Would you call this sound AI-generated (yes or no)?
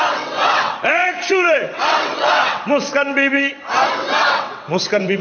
yes